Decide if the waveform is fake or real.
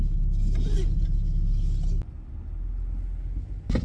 real